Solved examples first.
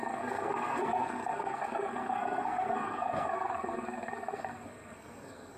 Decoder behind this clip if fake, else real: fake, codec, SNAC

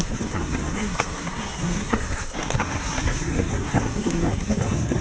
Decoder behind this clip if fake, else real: fake, codec, SNAC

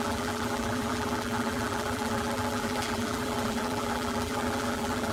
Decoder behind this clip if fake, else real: fake, vocoder, BigVGAN v2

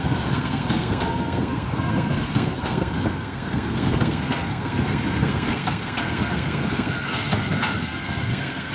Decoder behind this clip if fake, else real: fake, codec, SNAC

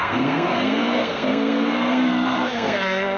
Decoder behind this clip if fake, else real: fake, codec, SNAC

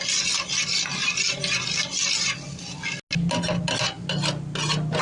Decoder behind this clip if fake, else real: real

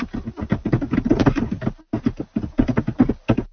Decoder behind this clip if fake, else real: real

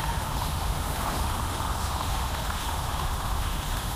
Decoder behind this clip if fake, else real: fake, autoencoder, DAC-VAE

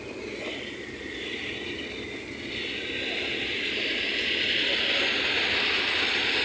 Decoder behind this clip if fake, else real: real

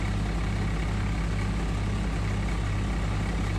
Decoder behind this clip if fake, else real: real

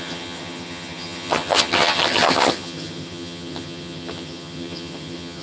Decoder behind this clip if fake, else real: fake, vocoder, HiFi-GAN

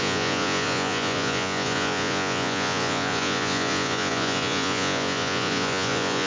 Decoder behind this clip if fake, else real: fake, vocoder, Vocos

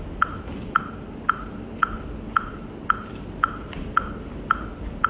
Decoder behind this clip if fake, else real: real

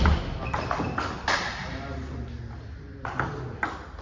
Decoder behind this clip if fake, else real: real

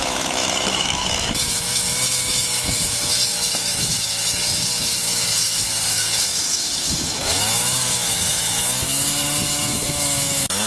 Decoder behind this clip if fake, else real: fake, autoencoder, DAC-VAE